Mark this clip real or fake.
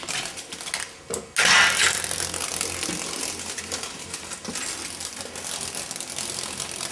real